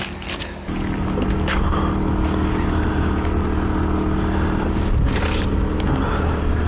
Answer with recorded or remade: recorded